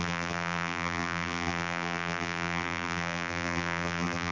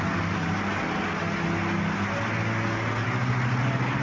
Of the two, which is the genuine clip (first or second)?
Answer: second